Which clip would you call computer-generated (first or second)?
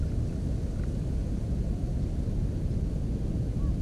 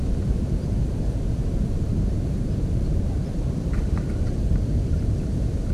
second